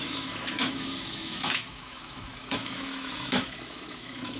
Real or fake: fake